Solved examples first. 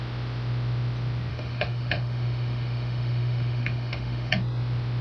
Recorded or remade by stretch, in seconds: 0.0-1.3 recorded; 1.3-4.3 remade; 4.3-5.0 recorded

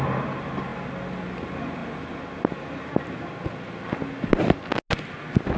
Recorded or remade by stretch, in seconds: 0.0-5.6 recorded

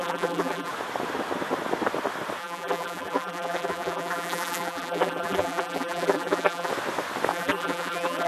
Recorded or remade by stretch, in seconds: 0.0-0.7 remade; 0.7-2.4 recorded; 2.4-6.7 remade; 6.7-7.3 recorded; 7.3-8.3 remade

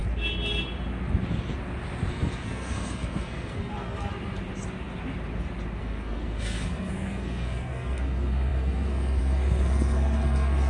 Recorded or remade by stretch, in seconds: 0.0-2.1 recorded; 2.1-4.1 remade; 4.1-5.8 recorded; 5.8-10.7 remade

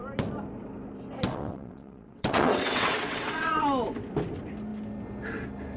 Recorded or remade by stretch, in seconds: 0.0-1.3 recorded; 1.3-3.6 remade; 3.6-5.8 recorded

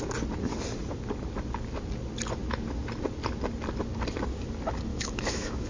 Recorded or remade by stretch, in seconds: 0.0-4.9 recorded; 4.9-5.7 remade

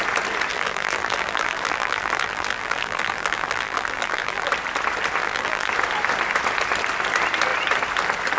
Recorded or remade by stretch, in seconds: 0.0-0.5 recorded; 0.5-4.5 remade; 4.5-5.2 recorded; 5.2-5.7 remade; 5.7-8.4 recorded